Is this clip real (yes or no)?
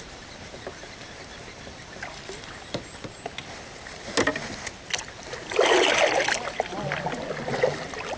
yes